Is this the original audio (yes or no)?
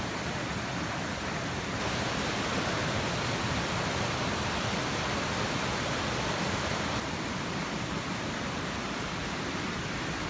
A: yes